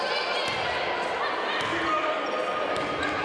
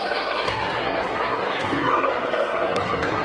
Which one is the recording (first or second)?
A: first